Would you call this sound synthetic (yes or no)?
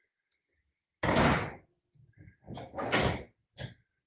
no